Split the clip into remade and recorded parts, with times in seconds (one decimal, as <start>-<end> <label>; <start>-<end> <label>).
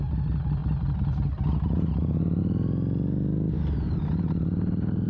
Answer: 0.0-5.1 recorded